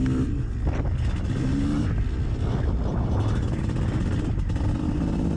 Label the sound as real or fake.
real